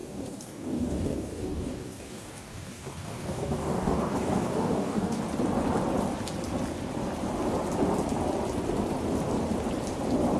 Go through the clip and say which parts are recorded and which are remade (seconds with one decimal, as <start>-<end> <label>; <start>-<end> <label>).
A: 0.0-5.2 remade; 5.2-10.4 recorded